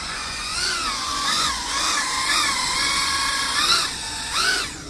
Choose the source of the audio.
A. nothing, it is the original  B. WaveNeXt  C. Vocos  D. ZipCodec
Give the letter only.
C